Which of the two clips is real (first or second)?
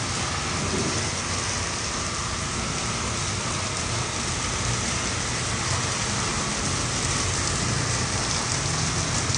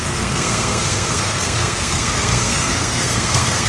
first